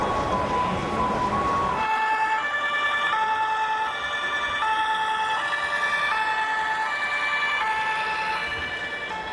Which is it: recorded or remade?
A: recorded